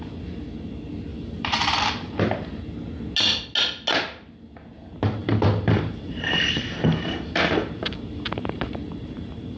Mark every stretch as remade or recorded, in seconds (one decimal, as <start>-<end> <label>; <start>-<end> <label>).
0.0-1.1 recorded; 1.1-2.2 remade; 2.2-5.2 recorded; 5.2-9.6 remade